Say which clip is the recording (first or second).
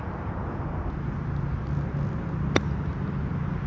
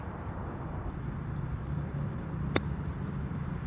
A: first